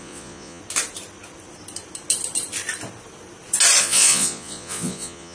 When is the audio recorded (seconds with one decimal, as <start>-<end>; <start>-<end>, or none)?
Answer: 0.6-3.8